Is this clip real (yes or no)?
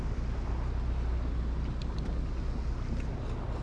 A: yes